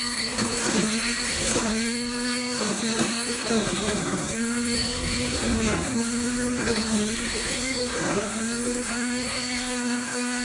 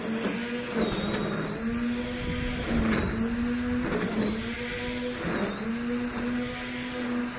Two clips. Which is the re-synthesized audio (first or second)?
first